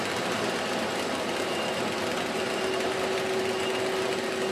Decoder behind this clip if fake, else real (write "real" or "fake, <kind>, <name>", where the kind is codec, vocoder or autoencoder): real